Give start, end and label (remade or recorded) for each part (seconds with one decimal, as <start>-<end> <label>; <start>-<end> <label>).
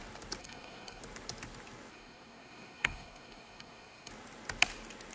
0.0-0.4 recorded; 0.4-1.0 remade; 1.0-1.9 recorded; 1.9-4.1 remade; 4.1-5.1 recorded